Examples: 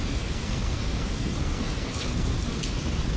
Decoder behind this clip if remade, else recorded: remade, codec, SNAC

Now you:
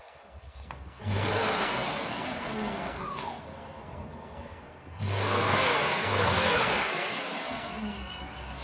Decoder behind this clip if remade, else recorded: remade, codec, SNAC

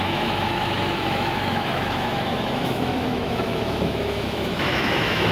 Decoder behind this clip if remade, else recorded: remade, autoencoder, DAC-VAE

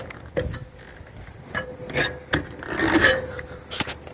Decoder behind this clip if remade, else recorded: recorded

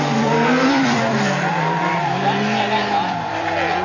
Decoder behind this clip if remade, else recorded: remade, vocoder, BigVGAN v2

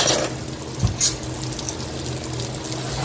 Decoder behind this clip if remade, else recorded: recorded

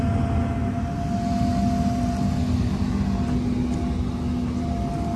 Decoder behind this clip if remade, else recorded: recorded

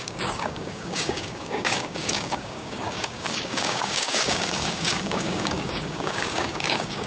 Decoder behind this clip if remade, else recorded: remade, codec, DAC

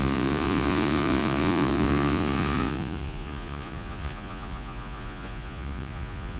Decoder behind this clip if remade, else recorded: remade, vocoder, Vocos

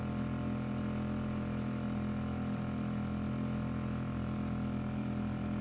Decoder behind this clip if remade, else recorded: recorded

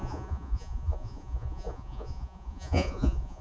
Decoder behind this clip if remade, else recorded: remade, vocoder, Vocos